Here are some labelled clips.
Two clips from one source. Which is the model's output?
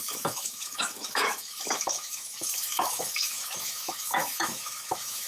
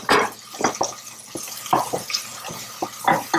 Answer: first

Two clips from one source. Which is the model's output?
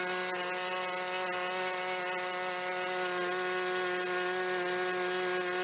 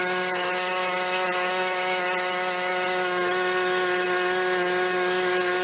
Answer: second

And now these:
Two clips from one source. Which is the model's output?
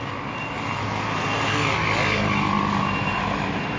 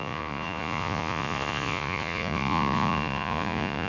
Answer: second